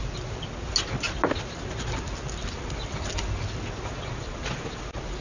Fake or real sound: real